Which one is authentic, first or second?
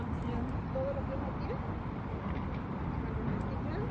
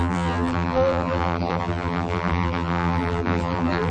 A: first